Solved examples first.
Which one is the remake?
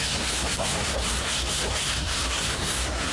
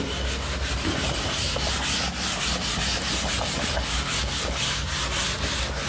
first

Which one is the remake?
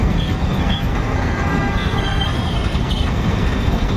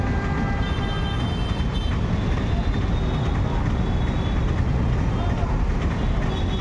first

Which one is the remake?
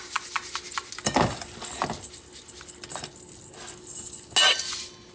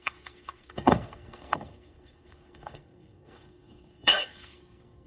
second